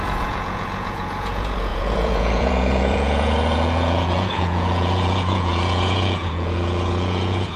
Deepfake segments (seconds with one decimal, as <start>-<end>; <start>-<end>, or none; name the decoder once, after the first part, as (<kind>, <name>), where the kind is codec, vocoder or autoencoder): 0.0-7.6 (vocoder, Vocos)